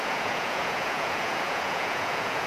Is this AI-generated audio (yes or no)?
yes